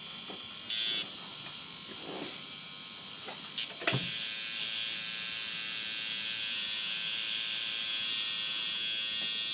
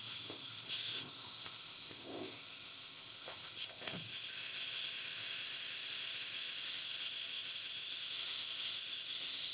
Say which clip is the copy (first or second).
second